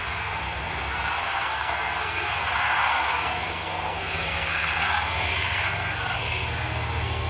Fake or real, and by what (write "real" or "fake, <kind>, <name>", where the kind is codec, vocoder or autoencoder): fake, codec, SNAC